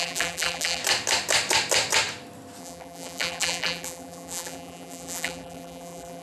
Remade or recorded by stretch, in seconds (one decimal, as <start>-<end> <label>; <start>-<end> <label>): 0.0-0.8 remade; 0.8-2.6 recorded; 2.6-6.2 remade